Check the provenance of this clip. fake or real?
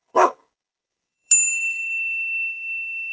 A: fake